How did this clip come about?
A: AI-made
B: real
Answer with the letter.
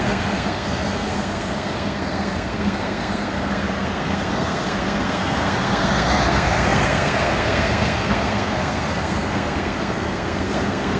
A